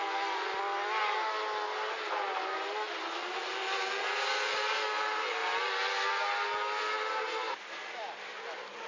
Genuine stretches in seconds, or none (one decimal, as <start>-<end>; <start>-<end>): 0.0-8.9